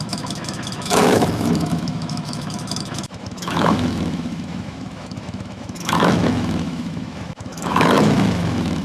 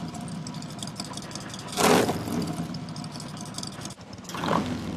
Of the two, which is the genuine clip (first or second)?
second